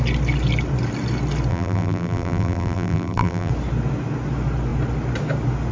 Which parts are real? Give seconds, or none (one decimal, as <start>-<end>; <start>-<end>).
0.0-1.5; 3.5-5.7

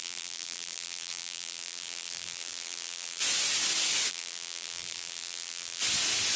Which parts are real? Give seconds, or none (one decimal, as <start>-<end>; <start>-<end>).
3.2-4.1; 5.8-6.4

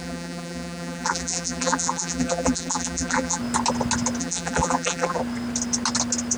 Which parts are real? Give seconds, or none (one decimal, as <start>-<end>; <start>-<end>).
3.4-4.2; 5.2-6.4

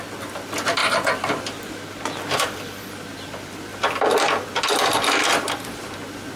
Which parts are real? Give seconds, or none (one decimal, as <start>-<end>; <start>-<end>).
0.8-2.3; 3.7-4.6

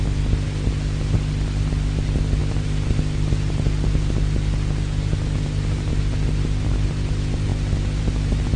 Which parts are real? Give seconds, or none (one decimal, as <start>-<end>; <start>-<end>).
0.0-8.6